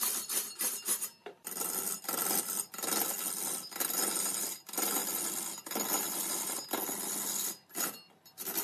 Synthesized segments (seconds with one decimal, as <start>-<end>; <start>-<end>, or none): none